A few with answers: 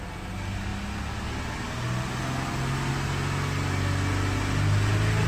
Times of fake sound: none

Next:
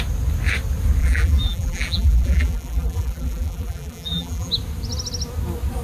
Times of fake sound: 1.0-4.5 (vocoder, BigVGAN v2)

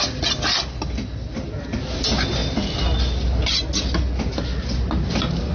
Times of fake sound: none

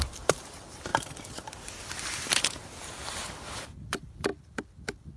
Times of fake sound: 0.0-4.3 (vocoder, BigVGAN v2)

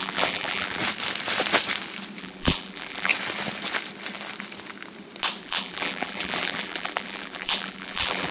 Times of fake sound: 0.0-0.8 (vocoder, BigVGAN v2); 2.2-3.1; 5.4-8.3

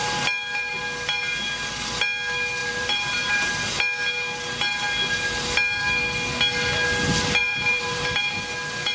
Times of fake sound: 2.6-3.5 (vocoder, BigVGAN v2); 7.4-8.2

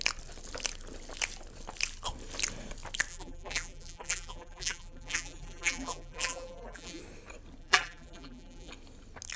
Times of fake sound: 3.1-7.0 (vocoder, BigVGAN v2); 7.6-8.7